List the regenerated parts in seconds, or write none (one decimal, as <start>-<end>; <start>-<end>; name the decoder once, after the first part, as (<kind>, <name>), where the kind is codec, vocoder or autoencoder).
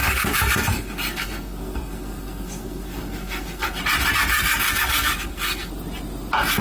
0.0-3.8 (codec, SNAC); 4.3-5.7